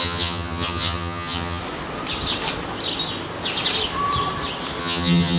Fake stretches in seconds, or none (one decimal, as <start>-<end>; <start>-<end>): 0.0-1.6; 4.8-5.4